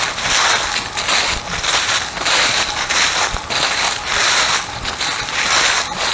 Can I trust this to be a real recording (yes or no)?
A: yes